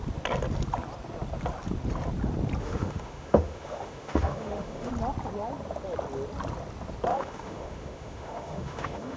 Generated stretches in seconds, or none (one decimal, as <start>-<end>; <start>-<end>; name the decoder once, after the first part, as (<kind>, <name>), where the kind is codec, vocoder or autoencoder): 2.6-4.9 (autoencoder, DAC-VAE); 7.1-9.2